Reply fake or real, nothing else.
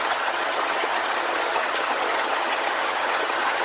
fake